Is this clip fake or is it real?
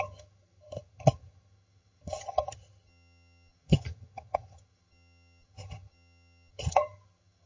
fake